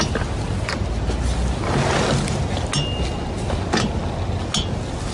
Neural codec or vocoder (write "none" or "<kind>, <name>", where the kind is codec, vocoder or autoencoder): none